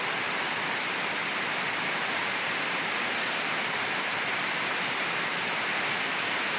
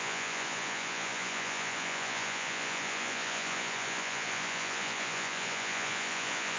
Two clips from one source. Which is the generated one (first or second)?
second